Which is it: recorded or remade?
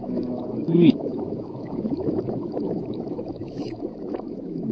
remade